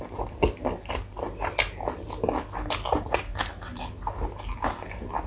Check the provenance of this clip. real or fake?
real